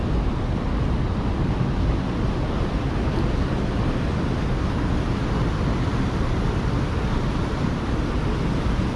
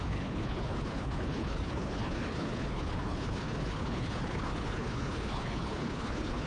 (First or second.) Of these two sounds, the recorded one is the first